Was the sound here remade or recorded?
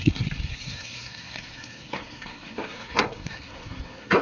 remade